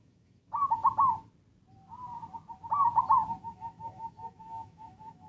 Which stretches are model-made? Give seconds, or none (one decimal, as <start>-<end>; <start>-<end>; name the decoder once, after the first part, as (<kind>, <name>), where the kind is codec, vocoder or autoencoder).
0.0-0.8 (autoencoder, DAC-VAE); 3.4-5.3